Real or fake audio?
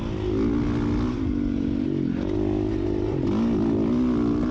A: real